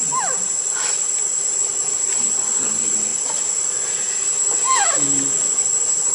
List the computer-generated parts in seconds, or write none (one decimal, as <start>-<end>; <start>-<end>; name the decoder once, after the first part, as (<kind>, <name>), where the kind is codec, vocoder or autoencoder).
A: 3.1-4.3 (vocoder, BigVGAN v2)